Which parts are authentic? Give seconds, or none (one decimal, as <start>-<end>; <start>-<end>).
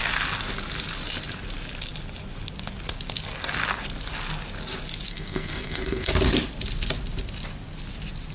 0.0-5.1; 6.1-8.3